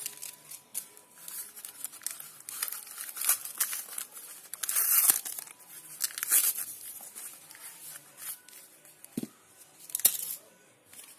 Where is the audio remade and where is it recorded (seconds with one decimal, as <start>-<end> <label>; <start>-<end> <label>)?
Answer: 0.0-11.2 recorded